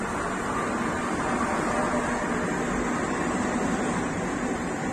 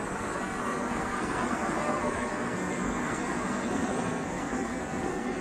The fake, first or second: second